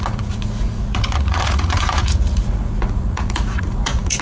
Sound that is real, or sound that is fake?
fake